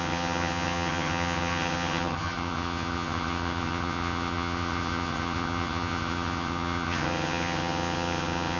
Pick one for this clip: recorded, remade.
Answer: remade